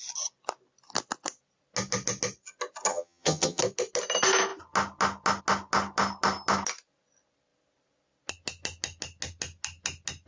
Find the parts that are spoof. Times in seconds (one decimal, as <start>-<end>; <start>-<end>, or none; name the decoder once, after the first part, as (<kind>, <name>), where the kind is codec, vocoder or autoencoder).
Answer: 2.9-3.6 (vocoder, HiFi-GAN)